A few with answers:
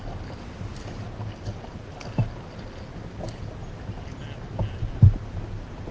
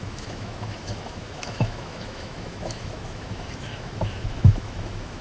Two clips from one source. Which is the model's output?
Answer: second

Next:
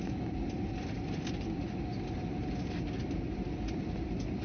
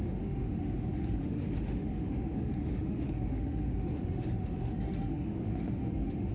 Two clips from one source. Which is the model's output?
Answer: second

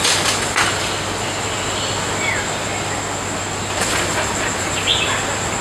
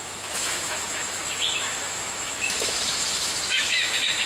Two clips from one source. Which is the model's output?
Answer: second